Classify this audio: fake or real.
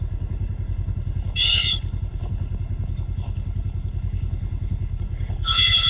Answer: fake